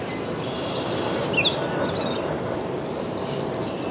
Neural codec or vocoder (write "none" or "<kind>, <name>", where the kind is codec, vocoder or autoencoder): none